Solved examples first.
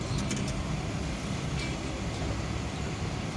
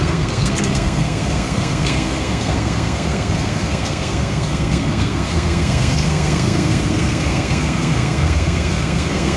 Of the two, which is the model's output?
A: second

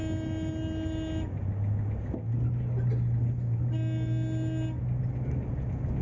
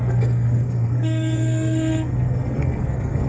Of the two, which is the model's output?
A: second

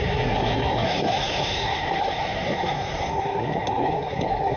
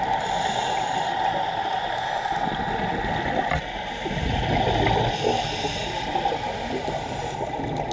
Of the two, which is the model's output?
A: first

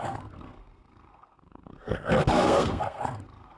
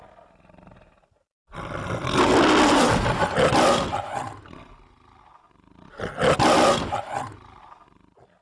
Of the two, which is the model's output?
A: first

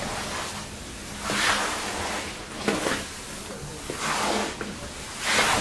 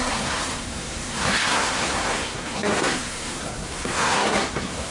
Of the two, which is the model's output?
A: second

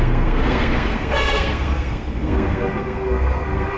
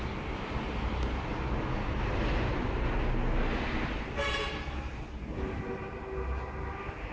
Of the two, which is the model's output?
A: first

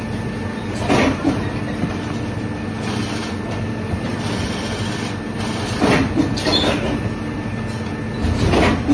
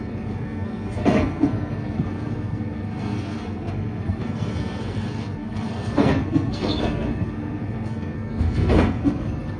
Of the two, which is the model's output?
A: second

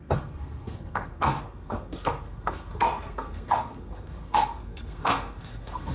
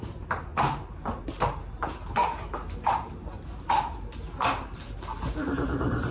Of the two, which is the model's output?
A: first